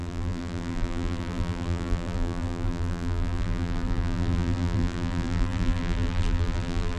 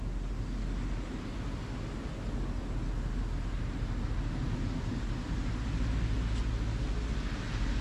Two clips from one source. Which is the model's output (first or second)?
first